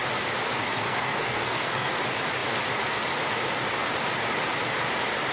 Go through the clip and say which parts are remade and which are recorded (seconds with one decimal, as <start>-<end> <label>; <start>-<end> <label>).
0.0-0.6 recorded; 0.6-1.9 remade; 1.9-5.3 recorded